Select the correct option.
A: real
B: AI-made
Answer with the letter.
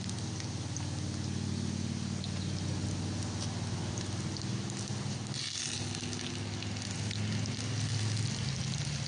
A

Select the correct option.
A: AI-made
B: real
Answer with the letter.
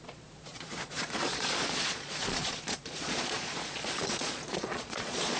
A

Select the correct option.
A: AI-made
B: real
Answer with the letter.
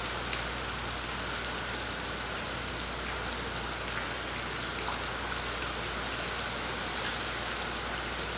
B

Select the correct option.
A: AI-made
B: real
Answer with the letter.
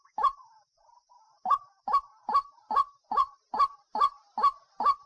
B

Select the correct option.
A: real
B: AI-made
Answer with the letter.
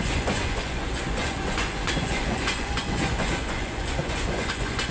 B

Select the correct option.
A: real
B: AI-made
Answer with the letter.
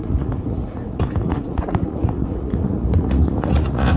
B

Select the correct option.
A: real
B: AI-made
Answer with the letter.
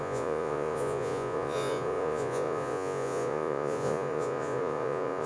B